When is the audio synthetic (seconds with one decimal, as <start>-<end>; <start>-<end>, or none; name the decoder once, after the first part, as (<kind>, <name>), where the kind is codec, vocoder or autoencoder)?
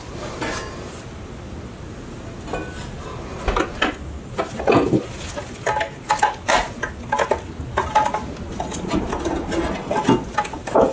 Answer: none